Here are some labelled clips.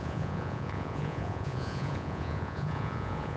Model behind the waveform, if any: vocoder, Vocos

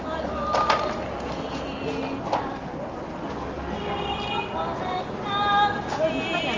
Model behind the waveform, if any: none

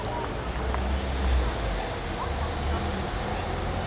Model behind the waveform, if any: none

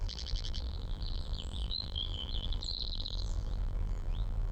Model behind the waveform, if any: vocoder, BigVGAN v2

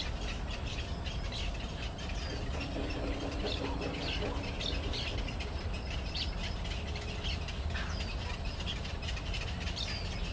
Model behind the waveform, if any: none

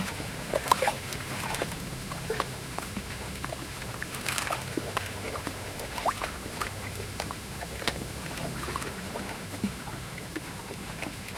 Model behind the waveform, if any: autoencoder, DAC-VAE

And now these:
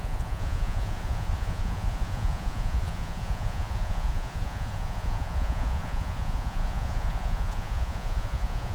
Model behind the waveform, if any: vocoder, Vocos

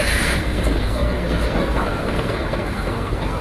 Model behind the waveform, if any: codec, SNAC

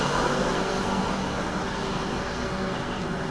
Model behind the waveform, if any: codec, SNAC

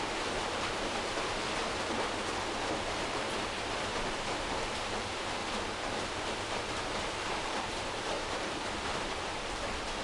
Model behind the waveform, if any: vocoder, BigVGAN v2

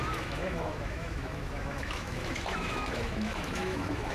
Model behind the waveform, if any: autoencoder, DAC-VAE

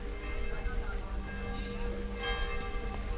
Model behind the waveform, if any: none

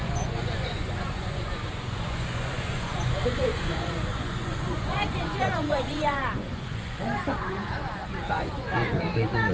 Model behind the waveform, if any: vocoder, Vocos